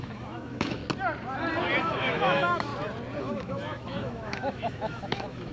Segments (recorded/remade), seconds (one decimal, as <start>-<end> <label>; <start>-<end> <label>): 0.0-0.8 remade; 0.8-1.8 recorded; 1.8-2.7 remade; 2.7-3.2 recorded; 3.2-5.5 remade